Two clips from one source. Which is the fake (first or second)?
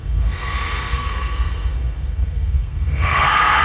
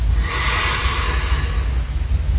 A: first